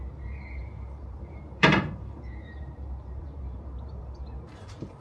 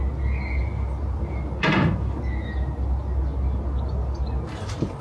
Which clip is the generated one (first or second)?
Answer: first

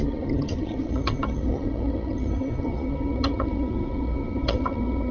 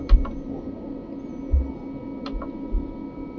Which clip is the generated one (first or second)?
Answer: first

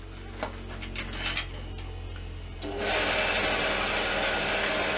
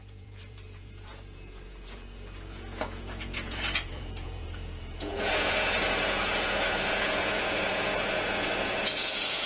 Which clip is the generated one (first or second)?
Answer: second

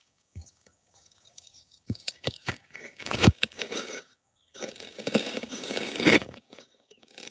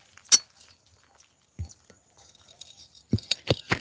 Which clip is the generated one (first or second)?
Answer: first